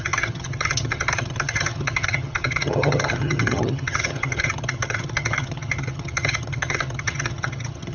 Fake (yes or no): yes